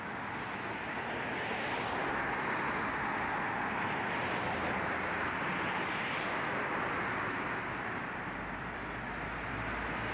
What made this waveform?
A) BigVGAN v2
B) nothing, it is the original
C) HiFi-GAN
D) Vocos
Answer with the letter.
B